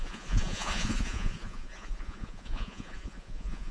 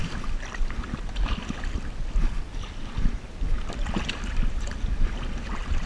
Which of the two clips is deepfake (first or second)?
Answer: first